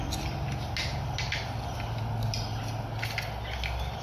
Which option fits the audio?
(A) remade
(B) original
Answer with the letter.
B